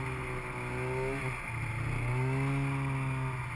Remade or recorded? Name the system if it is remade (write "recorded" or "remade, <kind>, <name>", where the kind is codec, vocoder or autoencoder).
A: recorded